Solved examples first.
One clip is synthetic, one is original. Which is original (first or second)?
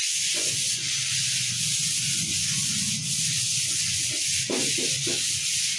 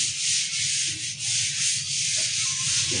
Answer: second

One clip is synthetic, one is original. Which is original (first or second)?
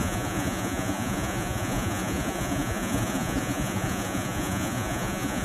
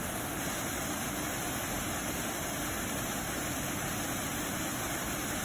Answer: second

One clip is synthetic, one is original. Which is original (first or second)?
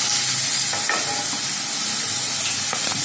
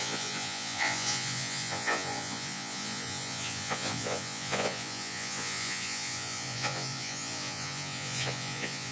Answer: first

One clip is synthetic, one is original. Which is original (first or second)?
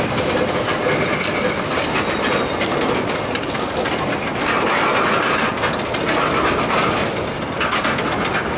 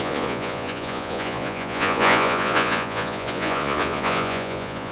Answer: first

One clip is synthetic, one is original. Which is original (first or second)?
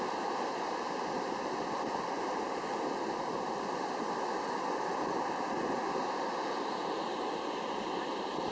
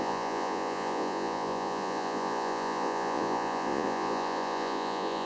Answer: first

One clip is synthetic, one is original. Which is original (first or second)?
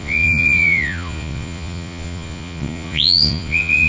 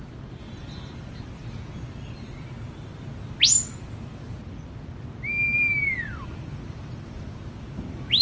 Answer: second